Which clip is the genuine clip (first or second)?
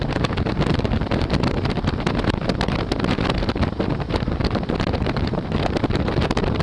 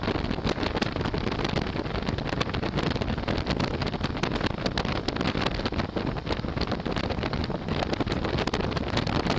second